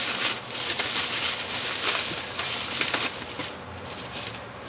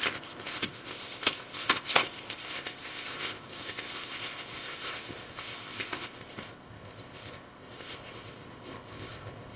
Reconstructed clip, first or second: second